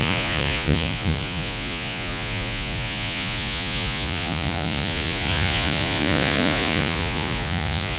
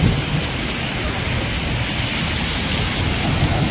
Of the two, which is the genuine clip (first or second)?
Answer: second